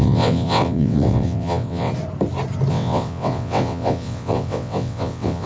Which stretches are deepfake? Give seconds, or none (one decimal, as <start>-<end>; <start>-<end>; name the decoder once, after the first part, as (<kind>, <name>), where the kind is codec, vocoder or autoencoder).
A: 0.0-1.9 (vocoder, WaveNeXt); 2.7-5.5